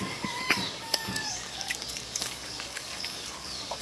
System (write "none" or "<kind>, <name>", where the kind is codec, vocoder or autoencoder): codec, DAC